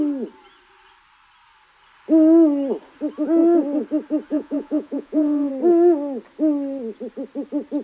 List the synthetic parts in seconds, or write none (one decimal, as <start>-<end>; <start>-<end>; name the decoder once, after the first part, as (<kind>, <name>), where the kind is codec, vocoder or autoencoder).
4.3-5.5 (vocoder, Vocos)